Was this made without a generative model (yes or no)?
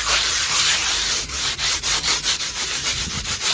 no